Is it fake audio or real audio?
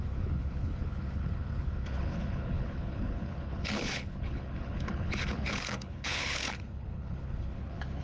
fake